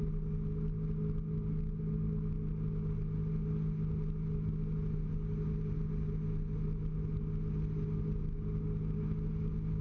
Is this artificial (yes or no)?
no